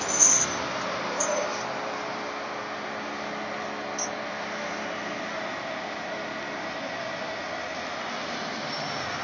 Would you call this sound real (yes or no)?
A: yes